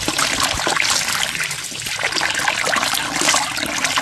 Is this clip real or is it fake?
real